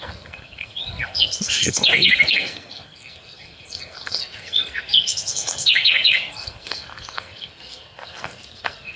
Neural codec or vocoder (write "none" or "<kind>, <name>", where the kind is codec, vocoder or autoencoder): codec, SNAC